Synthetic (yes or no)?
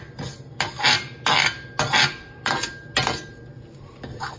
no